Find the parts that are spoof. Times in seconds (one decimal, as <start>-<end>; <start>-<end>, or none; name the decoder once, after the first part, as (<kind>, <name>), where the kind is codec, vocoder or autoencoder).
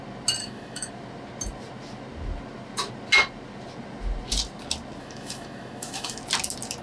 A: 0.4-0.9 (autoencoder, DAC-VAE); 5.0-6.2